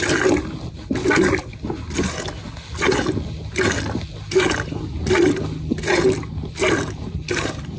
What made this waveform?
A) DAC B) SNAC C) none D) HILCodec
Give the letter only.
C